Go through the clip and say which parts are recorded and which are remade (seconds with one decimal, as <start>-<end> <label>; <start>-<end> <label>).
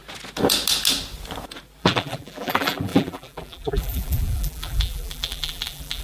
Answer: 0.0-1.8 recorded; 1.8-6.0 remade